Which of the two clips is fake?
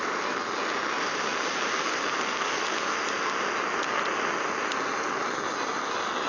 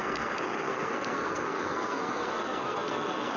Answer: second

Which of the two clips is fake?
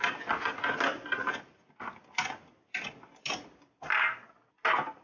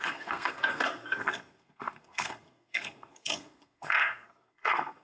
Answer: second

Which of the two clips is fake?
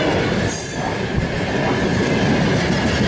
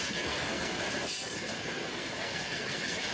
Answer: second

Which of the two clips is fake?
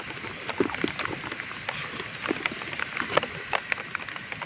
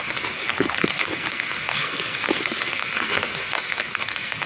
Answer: second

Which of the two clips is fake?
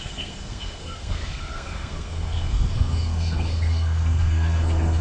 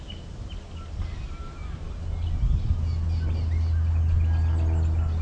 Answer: first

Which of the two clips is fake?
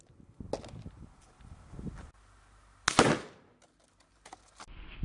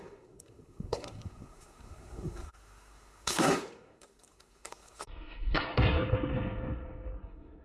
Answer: second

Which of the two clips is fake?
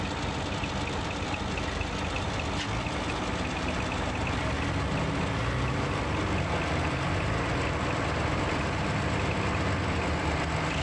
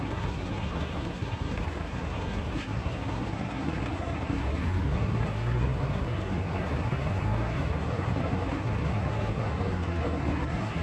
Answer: second